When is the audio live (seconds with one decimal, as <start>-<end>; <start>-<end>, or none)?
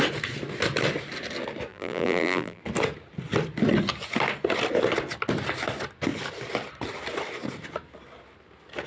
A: 0.0-1.7; 2.6-8.9